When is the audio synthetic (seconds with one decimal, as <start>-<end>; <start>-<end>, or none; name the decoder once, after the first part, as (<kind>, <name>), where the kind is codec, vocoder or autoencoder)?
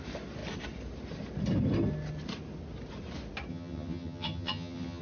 3.5-5.0 (vocoder, HiFi-GAN)